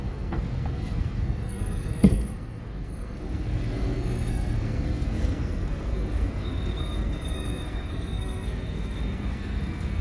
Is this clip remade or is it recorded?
remade